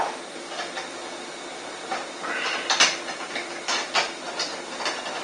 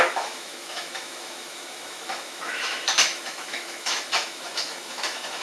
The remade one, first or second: second